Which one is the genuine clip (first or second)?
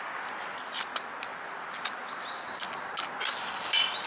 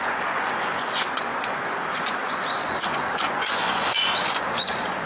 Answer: first